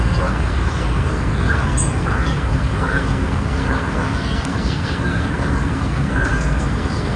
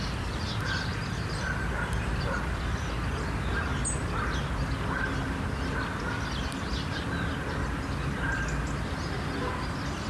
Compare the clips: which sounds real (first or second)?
second